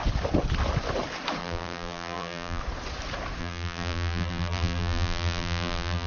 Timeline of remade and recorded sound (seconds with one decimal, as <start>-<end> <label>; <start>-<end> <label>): 0.0-1.4 recorded; 1.4-2.6 remade; 2.6-3.4 recorded; 3.4-6.1 remade